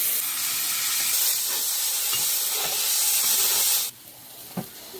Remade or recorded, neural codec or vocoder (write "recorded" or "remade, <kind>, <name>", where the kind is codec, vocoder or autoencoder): recorded